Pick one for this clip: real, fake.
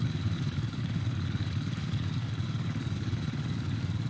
fake